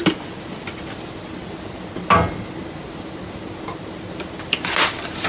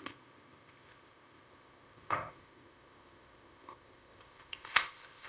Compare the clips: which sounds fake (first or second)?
second